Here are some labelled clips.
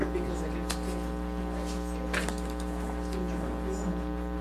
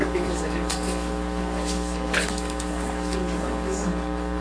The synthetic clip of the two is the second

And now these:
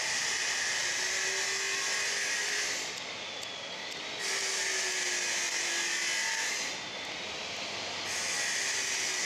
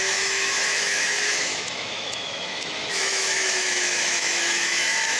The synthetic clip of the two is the second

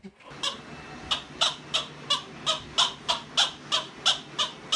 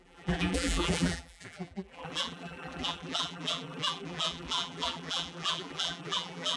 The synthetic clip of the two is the second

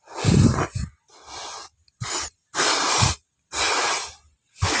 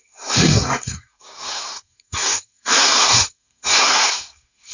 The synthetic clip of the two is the second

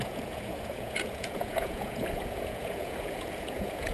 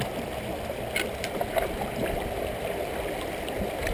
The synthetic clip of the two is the first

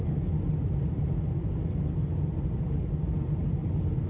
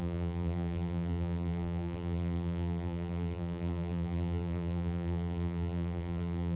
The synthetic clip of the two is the second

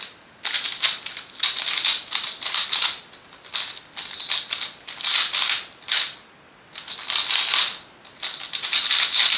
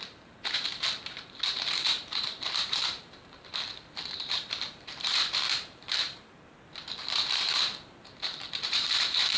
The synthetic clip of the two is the second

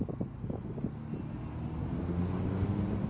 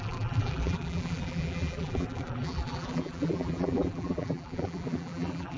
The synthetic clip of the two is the second